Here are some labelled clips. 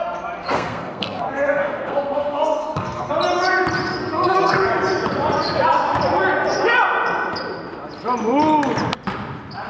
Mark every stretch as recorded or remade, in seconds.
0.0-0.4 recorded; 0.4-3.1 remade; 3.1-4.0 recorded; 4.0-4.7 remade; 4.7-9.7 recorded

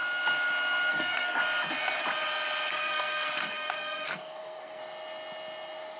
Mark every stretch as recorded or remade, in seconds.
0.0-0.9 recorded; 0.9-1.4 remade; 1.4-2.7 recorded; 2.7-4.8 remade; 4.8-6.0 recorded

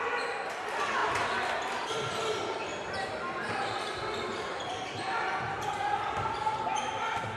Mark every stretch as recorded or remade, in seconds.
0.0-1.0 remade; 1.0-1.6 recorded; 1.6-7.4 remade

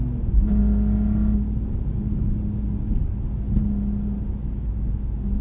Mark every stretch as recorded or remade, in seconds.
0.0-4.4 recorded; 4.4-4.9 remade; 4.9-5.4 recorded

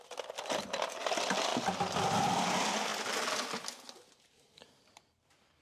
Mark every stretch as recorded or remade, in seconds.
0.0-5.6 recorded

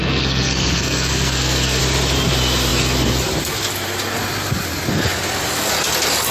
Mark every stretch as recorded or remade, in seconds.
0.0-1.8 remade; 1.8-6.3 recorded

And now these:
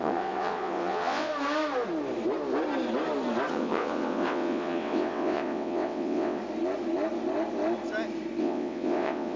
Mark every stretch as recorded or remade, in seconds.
0.0-1.3 remade; 1.3-3.5 recorded; 3.5-6.4 remade; 6.4-8.4 recorded; 8.4-9.4 remade